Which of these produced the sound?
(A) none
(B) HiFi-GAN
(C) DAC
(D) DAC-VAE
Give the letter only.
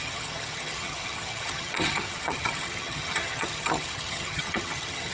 B